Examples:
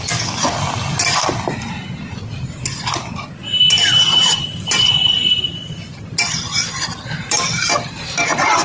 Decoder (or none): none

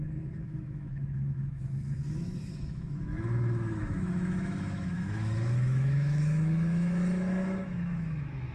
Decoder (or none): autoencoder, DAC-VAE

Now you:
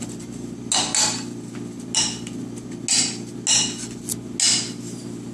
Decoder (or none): none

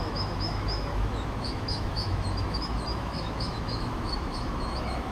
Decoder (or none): autoencoder, DAC-VAE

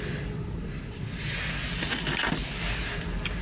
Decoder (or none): none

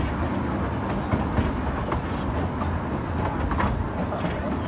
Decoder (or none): none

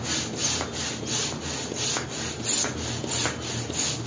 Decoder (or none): none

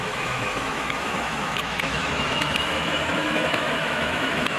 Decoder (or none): autoencoder, DAC-VAE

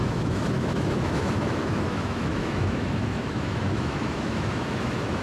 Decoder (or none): autoencoder, DAC-VAE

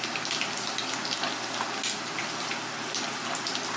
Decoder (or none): none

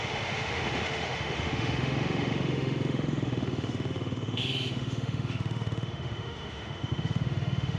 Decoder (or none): autoencoder, DAC-VAE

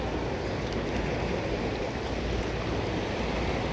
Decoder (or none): none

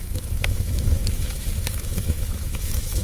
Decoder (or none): autoencoder, DAC-VAE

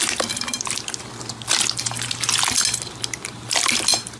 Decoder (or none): none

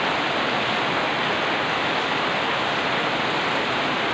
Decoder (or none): none